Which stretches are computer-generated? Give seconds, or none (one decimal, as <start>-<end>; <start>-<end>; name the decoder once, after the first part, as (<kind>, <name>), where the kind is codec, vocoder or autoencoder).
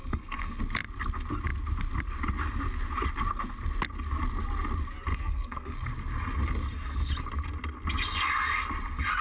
0.0-0.6 (codec, SNAC); 5.1-5.9